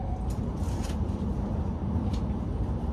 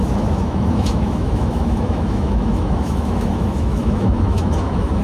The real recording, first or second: first